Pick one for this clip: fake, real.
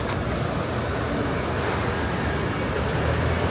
real